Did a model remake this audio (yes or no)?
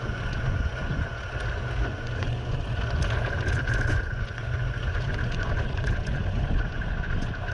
yes